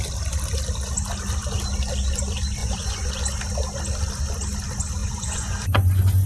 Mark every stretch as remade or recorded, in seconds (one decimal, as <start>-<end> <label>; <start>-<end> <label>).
0.0-2.6 recorded; 2.6-3.1 remade; 3.1-5.0 recorded; 5.0-6.3 remade